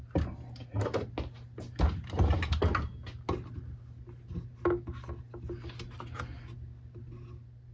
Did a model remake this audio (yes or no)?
no